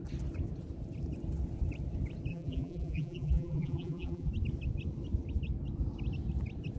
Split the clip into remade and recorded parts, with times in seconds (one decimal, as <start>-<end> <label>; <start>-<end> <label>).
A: 0.0-2.3 recorded; 2.3-4.3 remade; 4.3-6.8 recorded